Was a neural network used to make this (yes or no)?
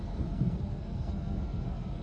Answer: yes